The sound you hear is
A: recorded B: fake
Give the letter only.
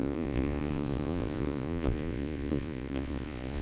B